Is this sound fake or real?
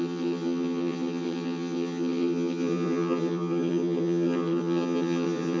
fake